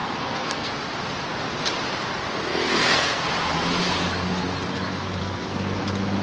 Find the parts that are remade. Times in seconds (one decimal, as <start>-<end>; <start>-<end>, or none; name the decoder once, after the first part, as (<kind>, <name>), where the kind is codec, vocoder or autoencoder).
0.0-0.7 (codec, SNAC); 2.5-3.3; 5.2-5.8